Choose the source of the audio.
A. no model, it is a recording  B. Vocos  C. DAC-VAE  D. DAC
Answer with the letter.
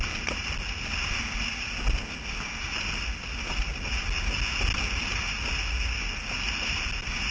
A